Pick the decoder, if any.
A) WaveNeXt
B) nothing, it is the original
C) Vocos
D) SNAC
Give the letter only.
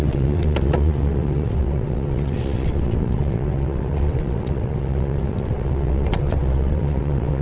A